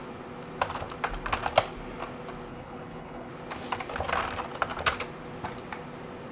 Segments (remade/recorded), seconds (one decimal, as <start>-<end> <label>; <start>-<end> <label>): 0.0-2.5 recorded; 2.5-3.3 remade; 3.3-6.3 recorded